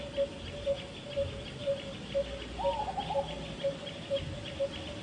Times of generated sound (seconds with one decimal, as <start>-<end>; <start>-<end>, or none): none